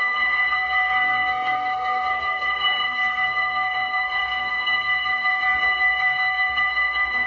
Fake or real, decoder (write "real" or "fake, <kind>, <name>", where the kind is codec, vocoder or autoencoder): fake, codec, SNAC